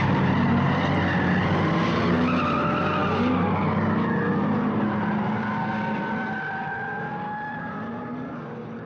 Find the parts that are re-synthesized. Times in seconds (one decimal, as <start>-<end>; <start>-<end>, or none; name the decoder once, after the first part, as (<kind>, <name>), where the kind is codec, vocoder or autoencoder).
none